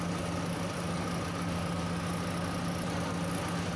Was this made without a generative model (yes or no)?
yes